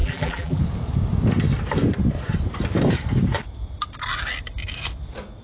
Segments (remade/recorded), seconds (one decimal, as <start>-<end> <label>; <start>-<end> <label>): 0.0-0.6 remade; 0.6-5.4 recorded